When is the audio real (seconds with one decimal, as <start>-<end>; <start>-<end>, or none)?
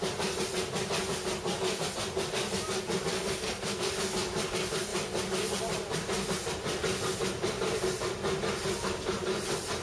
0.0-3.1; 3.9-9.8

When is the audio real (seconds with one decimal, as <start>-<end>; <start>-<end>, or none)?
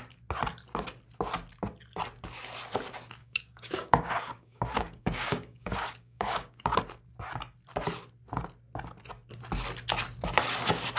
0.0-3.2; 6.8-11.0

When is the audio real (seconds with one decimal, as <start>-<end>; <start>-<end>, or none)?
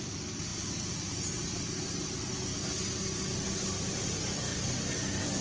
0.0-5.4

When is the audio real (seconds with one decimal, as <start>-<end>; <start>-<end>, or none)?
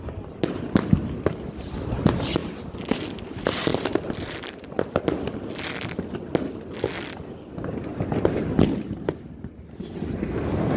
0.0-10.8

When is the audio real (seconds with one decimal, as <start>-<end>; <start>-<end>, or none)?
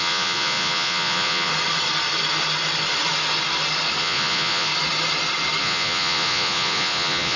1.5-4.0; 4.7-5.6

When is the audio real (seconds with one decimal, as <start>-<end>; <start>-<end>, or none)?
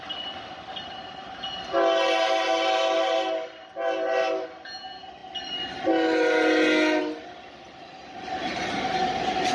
0.0-9.5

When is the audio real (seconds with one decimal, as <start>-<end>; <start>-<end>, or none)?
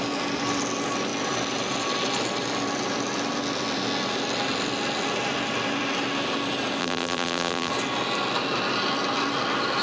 0.0-6.8; 7.7-9.8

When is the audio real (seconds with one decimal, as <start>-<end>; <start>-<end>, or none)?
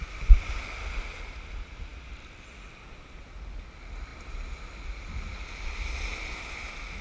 0.0-7.0